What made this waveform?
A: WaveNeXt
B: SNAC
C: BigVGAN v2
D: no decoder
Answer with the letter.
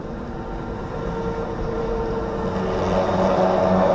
D